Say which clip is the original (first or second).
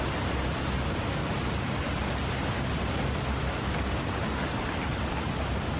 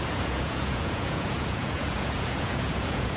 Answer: first